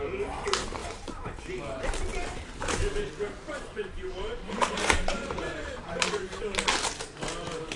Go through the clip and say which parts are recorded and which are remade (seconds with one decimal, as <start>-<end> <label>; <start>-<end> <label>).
0.0-0.8 recorded; 0.8-1.4 remade; 1.4-2.1 recorded; 2.1-6.4 remade; 6.4-7.8 recorded